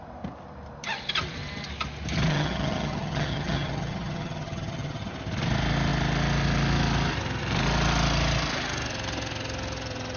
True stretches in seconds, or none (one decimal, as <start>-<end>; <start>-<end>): 0.0-2.3; 5.1-10.2